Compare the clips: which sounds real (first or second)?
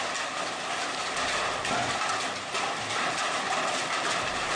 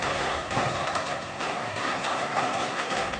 first